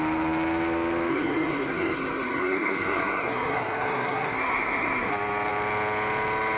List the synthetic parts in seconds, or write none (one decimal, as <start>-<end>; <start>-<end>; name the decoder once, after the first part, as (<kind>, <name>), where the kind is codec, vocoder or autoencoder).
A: 1.1-5.1 (codec, SNAC)